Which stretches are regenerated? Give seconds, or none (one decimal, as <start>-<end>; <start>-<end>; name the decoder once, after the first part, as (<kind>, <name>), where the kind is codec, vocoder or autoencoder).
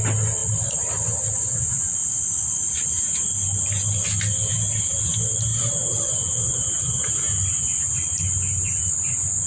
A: none